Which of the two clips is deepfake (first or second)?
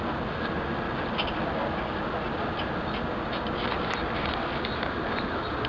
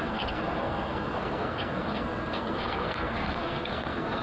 second